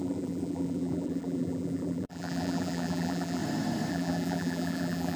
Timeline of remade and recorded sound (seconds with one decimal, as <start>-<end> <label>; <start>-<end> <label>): 0.0-3.4 remade; 3.4-3.9 recorded; 3.9-5.2 remade